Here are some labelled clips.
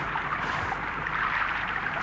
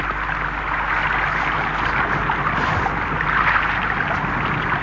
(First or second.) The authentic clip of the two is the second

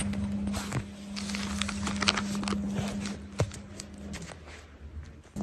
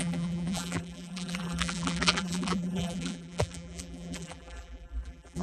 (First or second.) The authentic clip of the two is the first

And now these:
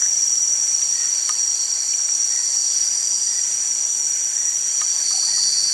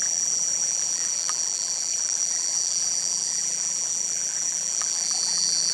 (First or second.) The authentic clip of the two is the first